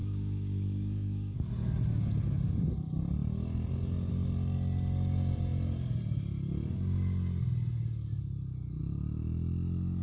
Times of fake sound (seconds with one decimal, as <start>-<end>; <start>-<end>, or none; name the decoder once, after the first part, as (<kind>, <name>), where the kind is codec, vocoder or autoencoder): 0.0-1.4 (codec, DAC)